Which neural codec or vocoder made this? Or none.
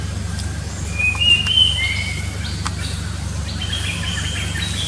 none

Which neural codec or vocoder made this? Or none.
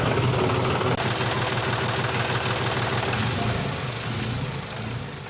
none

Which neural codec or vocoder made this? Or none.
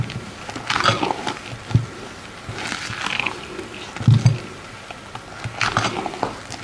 none